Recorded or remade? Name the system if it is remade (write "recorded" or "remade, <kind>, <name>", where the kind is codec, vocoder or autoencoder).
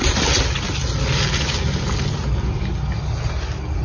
recorded